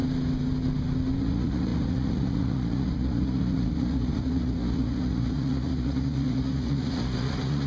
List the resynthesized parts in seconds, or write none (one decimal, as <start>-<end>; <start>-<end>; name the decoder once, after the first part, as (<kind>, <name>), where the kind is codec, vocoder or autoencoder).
1.2-7.7 (vocoder, Vocos)